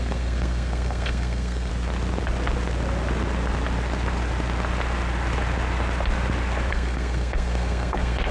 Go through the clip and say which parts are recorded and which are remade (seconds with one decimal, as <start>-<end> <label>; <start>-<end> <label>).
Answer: 0.0-1.7 remade; 1.7-6.7 recorded; 6.7-8.3 remade